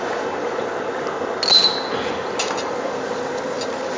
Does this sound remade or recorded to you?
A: recorded